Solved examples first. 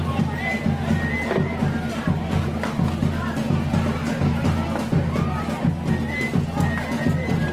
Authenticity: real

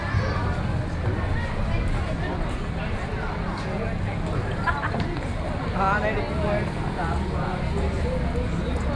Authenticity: real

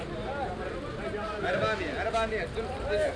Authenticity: real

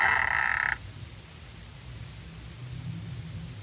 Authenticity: real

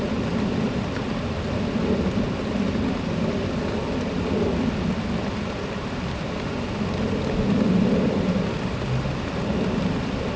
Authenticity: real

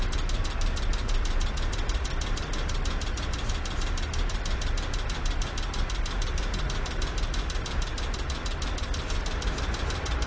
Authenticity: real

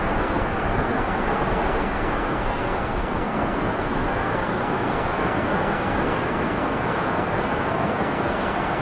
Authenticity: fake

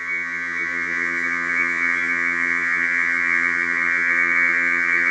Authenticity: fake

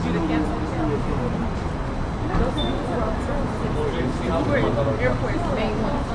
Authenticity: real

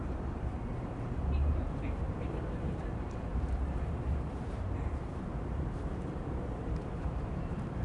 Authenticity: fake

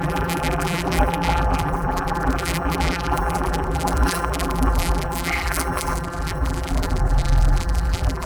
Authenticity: fake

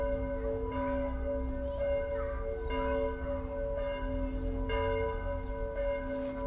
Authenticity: real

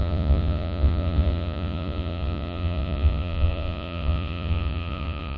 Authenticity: fake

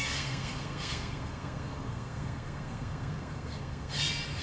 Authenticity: fake